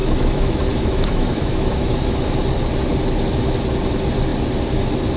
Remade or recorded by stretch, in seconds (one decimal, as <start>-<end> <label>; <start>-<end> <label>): 0.0-2.3 remade; 2.3-5.2 recorded